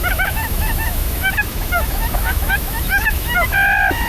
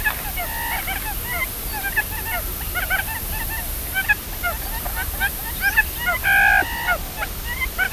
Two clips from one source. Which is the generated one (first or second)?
first